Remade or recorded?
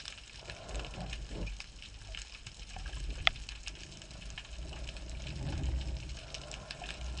recorded